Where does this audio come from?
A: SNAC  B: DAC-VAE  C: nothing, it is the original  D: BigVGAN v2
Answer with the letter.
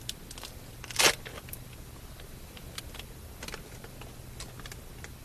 C